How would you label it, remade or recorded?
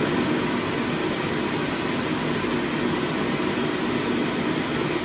recorded